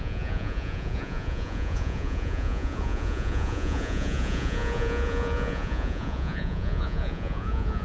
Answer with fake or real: fake